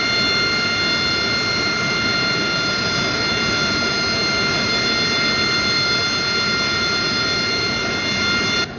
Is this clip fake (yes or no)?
no